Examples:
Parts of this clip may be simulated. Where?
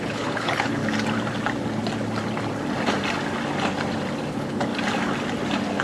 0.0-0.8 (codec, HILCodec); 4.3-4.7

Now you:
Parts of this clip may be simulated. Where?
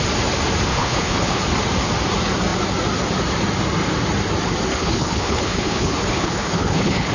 0.7-1.4 (codec, HILCodec); 4.7-7.1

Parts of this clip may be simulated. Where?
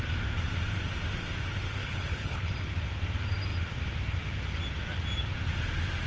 1.8-2.5 (codec, HILCodec)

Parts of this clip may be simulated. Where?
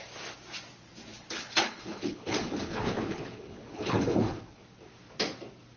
1.1-4.6 (codec, HILCodec)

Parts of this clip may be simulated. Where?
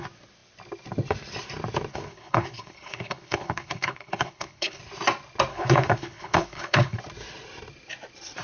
1.9-4.8 (codec, HILCodec); 5.5-7.0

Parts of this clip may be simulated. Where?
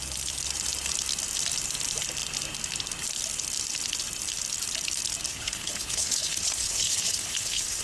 5.3-7.8 (codec, HILCodec)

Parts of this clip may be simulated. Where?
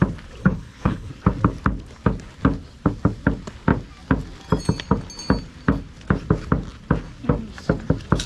0.4-1.1 (codec, HILCodec)